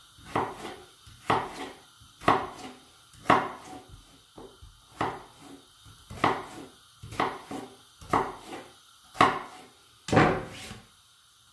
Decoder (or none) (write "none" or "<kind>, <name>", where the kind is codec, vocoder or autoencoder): none